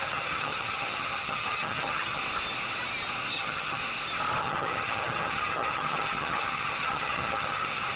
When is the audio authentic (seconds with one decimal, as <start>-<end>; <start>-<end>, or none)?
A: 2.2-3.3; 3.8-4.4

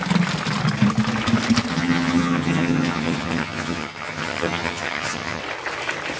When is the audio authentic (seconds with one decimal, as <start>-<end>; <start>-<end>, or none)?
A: 0.0-1.7; 5.4-6.2

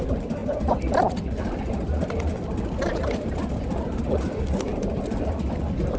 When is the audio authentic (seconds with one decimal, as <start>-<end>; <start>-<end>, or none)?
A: 0.0-6.0

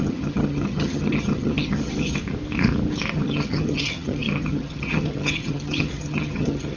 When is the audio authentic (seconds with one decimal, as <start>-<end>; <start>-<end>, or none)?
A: 2.2-3.1

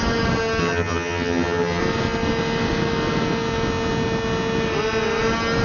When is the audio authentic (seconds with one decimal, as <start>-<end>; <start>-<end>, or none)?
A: 0.0-0.6; 1.8-5.6

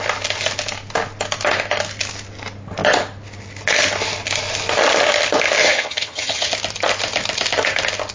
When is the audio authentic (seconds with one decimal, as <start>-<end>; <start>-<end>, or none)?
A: 0.0-5.6; 6.5-8.1